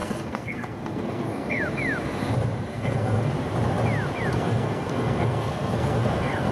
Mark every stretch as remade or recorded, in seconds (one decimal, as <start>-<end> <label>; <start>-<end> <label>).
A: 0.0-1.6 remade; 1.6-2.7 recorded; 2.7-3.3 remade; 3.3-4.3 recorded; 4.3-6.5 remade